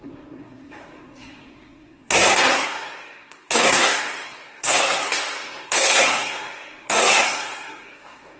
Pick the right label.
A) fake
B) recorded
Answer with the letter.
A